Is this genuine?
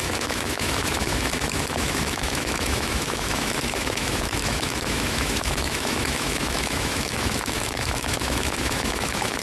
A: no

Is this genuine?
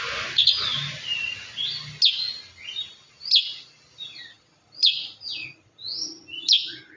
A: yes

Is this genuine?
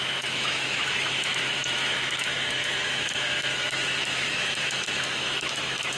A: no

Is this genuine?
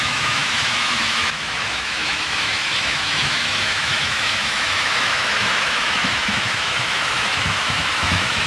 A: no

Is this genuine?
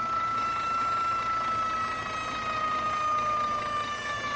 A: yes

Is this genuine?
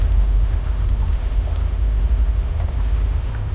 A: no